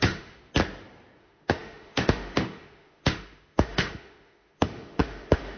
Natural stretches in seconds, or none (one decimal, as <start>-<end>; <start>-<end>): 0.5-1.2